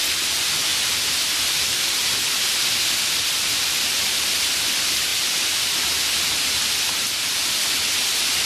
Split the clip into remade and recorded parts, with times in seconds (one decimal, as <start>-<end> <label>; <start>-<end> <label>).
0.0-8.5 recorded